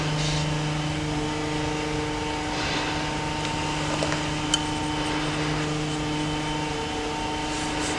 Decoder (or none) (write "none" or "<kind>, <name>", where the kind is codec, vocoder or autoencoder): none